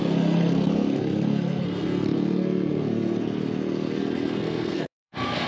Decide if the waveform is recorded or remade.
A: remade